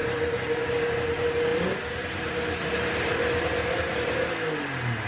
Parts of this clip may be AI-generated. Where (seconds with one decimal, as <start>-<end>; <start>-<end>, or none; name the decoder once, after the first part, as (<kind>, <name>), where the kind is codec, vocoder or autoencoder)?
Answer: none

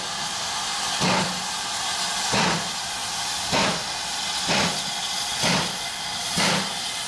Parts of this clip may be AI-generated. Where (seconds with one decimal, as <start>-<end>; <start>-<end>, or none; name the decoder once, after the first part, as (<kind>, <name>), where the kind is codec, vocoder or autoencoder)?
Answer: none

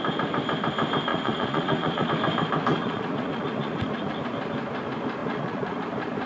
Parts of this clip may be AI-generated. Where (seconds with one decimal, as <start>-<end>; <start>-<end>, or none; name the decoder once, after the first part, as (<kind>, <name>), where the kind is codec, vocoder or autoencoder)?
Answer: 1.1-2.1 (vocoder, Vocos); 2.7-4.2; 5.2-5.8

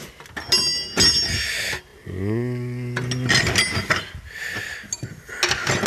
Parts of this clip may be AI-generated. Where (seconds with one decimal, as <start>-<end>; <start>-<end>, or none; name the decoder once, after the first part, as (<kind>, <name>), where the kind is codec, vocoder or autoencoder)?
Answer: none

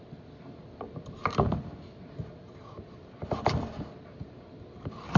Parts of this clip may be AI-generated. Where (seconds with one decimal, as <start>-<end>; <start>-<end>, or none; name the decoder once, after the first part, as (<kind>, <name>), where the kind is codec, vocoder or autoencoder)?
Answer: none

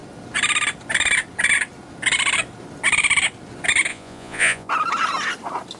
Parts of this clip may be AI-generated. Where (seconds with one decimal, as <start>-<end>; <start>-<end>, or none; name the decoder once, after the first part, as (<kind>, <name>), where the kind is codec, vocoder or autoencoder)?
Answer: 3.9-4.7 (vocoder, Vocos)

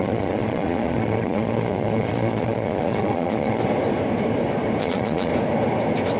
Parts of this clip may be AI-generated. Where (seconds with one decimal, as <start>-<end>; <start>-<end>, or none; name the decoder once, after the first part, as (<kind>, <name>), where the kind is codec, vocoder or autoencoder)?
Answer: 0.0-3.6 (vocoder, Vocos); 4.8-5.3

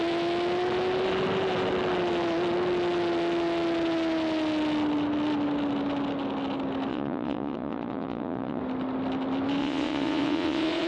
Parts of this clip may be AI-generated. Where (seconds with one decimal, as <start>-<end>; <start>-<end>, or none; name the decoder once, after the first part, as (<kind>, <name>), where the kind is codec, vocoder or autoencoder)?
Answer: 6.9-8.6 (vocoder, Vocos); 9.6-10.9